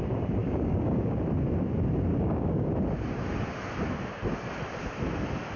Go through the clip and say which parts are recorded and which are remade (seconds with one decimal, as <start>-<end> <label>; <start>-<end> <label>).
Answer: 0.0-0.4 recorded; 0.4-1.2 remade; 1.2-2.1 recorded; 2.1-2.7 remade; 2.7-5.6 recorded